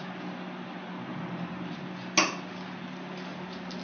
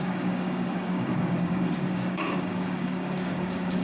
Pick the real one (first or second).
first